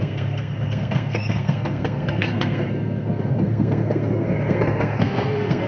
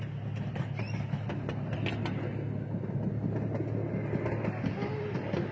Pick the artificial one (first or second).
first